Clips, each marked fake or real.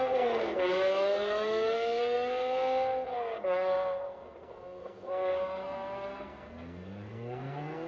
fake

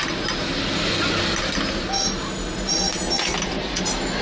real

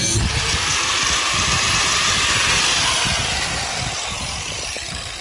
real